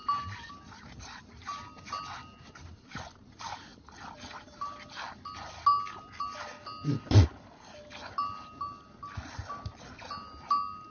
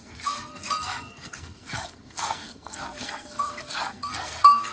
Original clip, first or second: first